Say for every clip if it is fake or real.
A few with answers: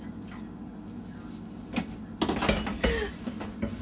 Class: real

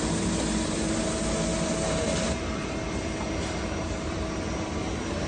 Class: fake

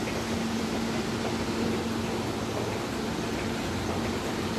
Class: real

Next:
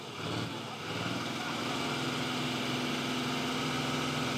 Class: real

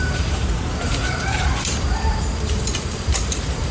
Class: fake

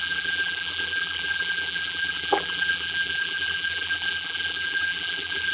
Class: fake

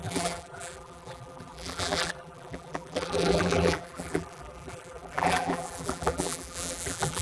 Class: fake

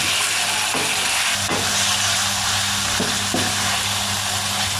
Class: real